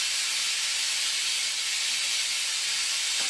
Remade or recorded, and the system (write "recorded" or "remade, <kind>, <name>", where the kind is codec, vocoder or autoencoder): remade, vocoder, BigVGAN v2